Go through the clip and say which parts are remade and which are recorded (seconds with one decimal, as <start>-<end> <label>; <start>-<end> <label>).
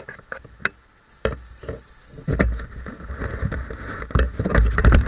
0.0-5.1 recorded